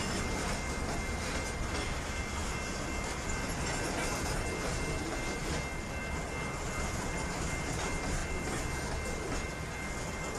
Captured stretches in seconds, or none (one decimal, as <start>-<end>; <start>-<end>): 0.0-10.4